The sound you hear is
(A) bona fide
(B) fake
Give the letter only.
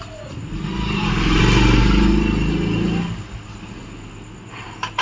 A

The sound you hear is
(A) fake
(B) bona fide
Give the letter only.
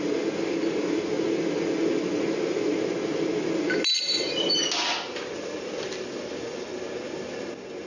B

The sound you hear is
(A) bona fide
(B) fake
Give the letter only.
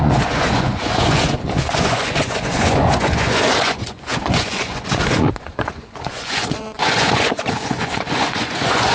B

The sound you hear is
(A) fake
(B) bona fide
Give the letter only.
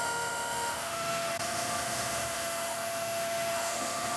A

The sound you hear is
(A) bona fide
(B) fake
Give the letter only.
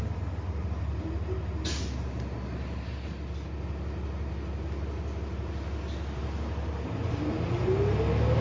A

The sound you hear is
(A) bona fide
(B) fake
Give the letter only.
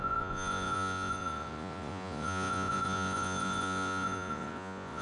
B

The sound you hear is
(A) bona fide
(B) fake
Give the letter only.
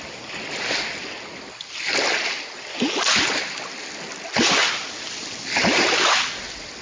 A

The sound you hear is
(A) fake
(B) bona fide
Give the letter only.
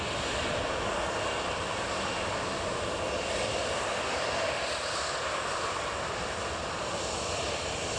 B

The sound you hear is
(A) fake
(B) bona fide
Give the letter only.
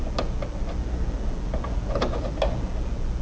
B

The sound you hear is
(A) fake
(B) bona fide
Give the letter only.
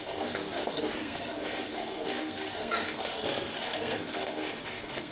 A